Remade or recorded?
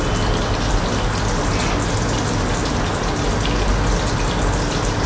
recorded